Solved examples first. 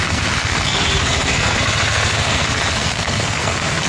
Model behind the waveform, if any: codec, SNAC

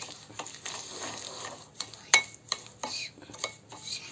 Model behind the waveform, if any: none